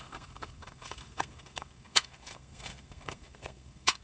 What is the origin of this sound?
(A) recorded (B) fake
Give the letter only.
B